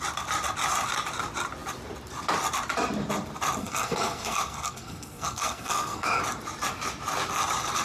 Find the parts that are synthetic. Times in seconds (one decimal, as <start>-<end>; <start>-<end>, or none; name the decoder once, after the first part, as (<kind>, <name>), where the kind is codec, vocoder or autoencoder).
3.6-6.2 (codec, SNAC)